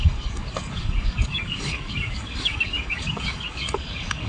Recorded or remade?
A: remade